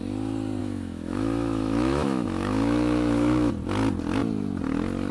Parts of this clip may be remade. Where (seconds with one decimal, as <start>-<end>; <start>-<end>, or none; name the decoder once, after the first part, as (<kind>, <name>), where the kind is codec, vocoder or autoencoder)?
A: 0.6-3.5 (autoencoder, DAC-VAE)